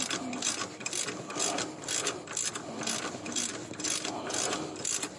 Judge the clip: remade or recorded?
recorded